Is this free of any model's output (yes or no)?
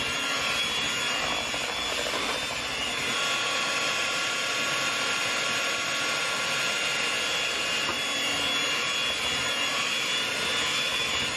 yes